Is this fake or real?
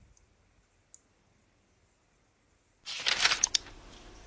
real